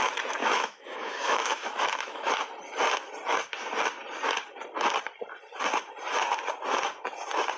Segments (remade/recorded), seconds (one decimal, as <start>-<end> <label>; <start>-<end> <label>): 0.0-0.4 recorded; 0.4-2.3 remade; 2.3-7.6 recorded